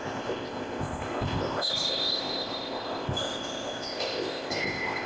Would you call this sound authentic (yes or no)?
no